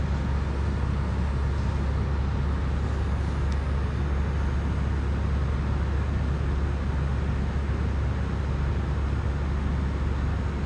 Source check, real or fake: real